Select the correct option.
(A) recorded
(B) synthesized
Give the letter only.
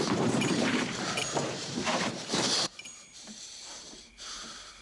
B